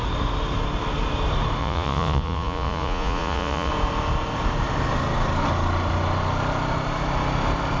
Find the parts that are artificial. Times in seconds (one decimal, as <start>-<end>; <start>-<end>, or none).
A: 1.6-3.7